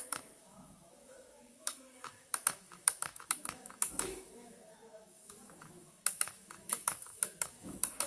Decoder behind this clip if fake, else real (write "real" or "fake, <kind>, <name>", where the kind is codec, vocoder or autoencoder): fake, autoencoder, DAC-VAE